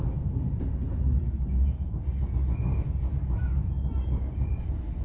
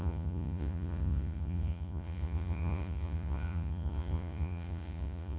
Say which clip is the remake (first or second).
second